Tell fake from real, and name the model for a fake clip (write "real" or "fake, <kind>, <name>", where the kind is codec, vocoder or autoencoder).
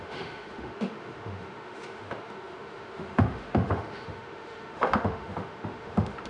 fake, autoencoder, DAC-VAE